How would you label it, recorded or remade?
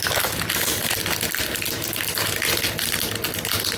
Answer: recorded